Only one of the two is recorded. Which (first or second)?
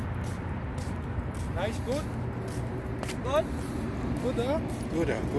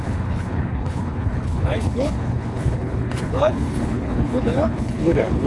first